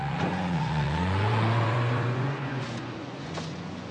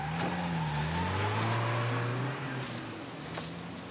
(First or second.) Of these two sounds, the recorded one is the second